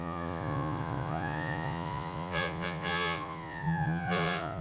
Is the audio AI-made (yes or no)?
yes